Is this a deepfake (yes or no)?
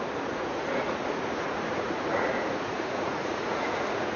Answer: yes